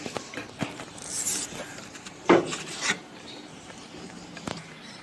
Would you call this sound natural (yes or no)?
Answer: no